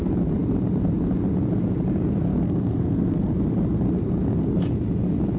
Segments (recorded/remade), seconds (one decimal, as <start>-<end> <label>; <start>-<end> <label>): 0.0-2.3 recorded; 2.3-3.3 remade; 3.3-5.4 recorded